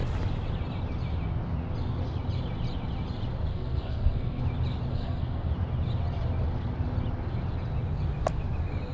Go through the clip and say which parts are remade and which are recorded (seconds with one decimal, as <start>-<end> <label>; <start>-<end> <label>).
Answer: 0.0-3.5 recorded; 3.5-4.4 remade; 4.4-4.9 recorded; 4.9-5.5 remade; 5.5-8.9 recorded